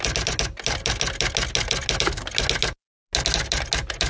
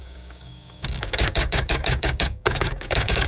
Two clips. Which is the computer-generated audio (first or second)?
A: second